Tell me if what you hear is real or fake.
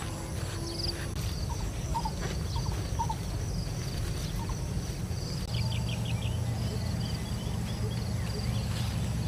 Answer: real